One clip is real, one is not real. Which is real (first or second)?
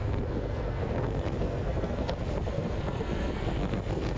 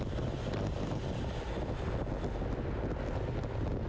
second